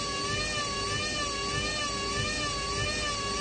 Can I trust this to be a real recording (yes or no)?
yes